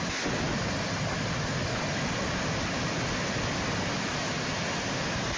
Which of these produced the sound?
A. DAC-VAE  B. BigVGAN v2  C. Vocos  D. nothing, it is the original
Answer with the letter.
D